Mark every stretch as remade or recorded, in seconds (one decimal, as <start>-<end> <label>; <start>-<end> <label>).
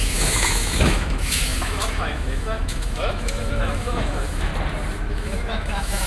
0.0-4.5 remade; 4.5-5.1 recorded; 5.1-6.1 remade